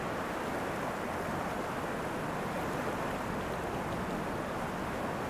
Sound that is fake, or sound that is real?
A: real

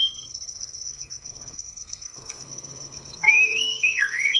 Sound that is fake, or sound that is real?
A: fake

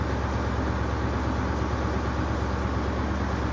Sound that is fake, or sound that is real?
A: real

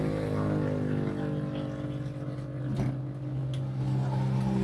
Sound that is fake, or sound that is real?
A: real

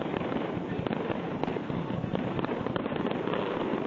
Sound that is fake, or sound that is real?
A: fake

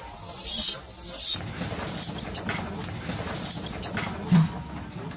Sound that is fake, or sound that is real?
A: real